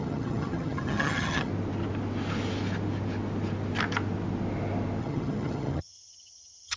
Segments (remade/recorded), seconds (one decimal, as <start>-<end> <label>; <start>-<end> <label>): 0.0-1.5 remade; 1.5-5.0 recorded; 5.0-6.8 remade